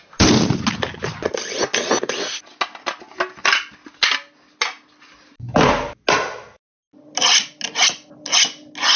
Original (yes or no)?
yes